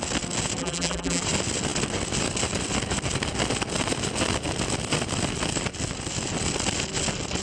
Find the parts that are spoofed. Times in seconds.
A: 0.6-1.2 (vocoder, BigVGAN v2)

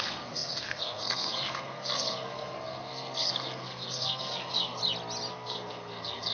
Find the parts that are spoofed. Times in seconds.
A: 0.0-4.8 (codec, SNAC); 5.3-6.3